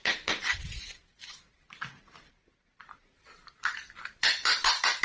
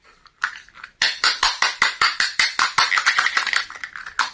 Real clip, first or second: second